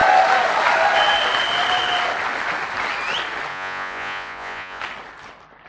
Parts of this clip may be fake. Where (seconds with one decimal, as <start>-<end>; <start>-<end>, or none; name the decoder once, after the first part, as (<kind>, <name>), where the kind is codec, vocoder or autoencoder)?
3.5-4.8 (vocoder, Vocos)